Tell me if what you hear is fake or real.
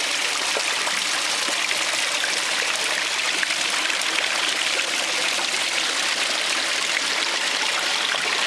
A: real